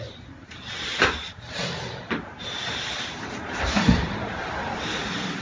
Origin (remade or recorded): remade